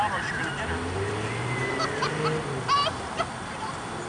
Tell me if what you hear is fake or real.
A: real